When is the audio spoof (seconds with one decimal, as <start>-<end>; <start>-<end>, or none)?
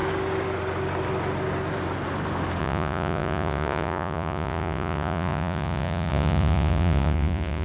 2.6-7.6